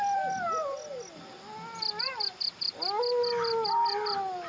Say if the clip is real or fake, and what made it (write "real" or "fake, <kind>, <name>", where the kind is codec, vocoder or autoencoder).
real